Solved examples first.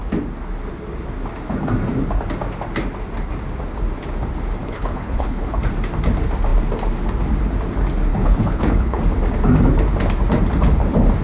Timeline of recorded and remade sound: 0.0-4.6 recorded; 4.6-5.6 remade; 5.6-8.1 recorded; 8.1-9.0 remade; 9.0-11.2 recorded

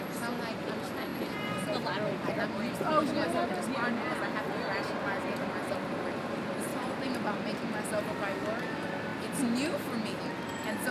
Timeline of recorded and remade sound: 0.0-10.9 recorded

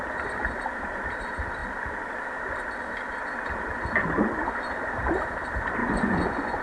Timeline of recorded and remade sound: 0.0-5.8 recorded; 5.8-6.6 remade

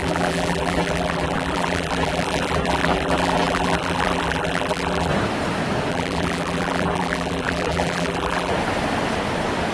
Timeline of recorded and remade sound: 0.0-5.1 remade; 5.1-5.9 recorded; 5.9-8.5 remade; 8.5-9.7 recorded

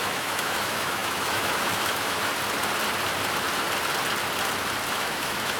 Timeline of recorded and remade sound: 0.0-2.3 remade; 2.3-4.9 recorded; 4.9-5.6 remade

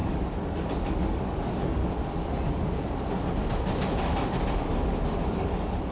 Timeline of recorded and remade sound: 0.0-1.8 remade; 1.8-5.3 recorded; 5.3-5.9 remade

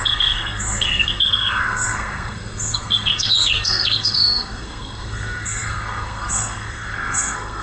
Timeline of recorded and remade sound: 0.0-7.6 remade